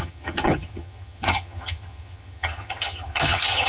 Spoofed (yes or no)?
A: yes